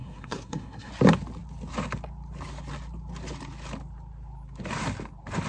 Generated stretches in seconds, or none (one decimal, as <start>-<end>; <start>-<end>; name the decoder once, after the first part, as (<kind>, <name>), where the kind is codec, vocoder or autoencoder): 0.0-0.9 (codec, SNAC)